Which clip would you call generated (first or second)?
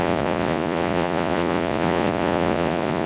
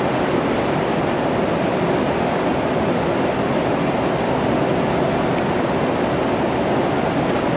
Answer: first